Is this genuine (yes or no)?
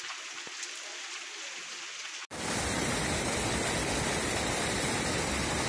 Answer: yes